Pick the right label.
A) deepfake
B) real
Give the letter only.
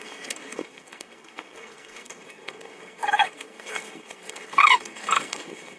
A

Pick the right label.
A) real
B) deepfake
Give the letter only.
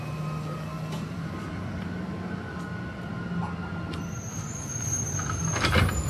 A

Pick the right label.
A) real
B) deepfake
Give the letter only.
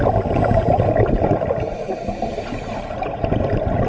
A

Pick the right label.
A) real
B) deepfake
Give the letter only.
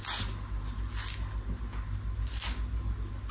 A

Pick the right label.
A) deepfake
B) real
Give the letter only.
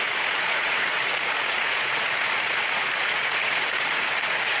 A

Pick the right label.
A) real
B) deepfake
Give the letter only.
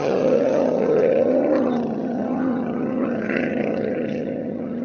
B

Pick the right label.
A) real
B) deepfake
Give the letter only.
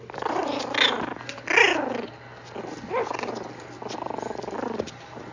A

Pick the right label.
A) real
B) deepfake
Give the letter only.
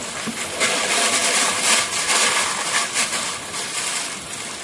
A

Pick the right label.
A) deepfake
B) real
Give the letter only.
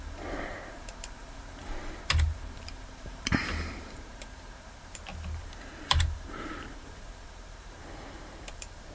A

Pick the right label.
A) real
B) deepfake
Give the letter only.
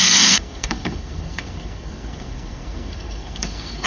B